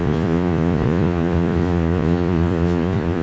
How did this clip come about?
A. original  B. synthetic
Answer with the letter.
B